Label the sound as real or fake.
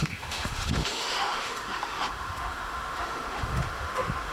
fake